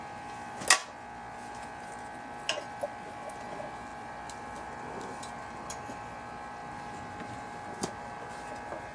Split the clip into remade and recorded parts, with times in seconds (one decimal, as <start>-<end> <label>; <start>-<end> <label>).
0.0-8.9 recorded